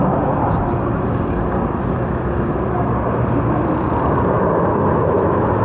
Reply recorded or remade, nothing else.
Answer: recorded